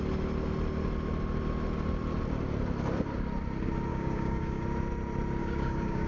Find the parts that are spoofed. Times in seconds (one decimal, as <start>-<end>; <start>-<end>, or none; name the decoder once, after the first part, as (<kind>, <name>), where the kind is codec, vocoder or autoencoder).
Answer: 3.9-4.6 (codec, DAC); 5.4-6.1